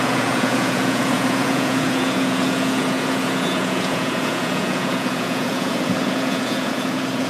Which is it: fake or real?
fake